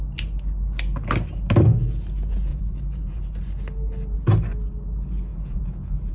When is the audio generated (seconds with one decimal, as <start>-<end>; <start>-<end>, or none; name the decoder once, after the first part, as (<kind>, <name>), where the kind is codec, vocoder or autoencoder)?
2.5-3.2 (vocoder, Vocos); 5.3-6.1